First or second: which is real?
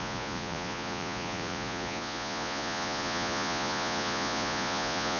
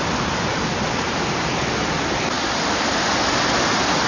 second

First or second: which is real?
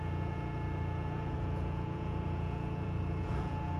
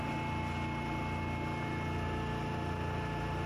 second